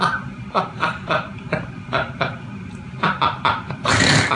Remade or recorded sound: remade